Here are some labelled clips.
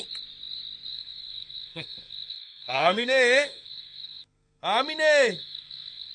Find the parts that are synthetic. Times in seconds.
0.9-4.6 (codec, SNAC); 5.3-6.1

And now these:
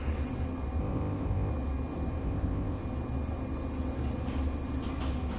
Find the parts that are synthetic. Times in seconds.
0.8-1.5 (codec, ZipCodec); 2.2-2.8

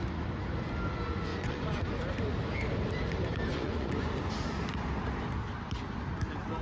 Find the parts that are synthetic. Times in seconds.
1.3-1.8 (vocoder, Vocos); 3.5-4.2